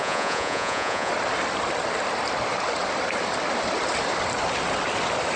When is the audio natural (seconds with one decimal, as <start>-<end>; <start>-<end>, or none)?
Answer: 1.1-5.4